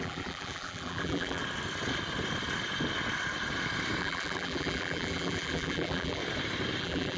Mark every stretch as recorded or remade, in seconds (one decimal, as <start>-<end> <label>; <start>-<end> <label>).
0.0-1.4 remade; 1.4-4.0 recorded; 4.0-6.2 remade; 6.2-6.8 recorded; 6.8-7.2 remade